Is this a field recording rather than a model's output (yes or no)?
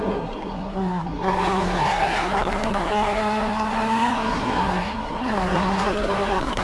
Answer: no